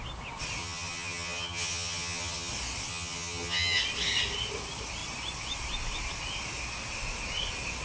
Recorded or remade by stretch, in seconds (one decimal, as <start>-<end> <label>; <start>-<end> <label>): 0.0-0.6 recorded; 0.6-2.5 remade; 2.5-2.9 recorded; 2.9-3.8 remade; 3.8-7.8 recorded